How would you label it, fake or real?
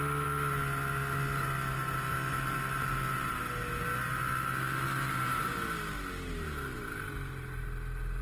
real